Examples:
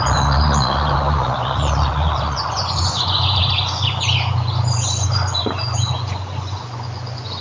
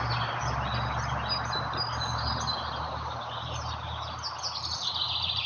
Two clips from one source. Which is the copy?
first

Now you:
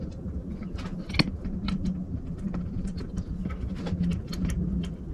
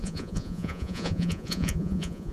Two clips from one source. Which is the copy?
second